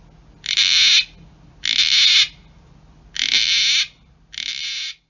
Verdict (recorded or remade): recorded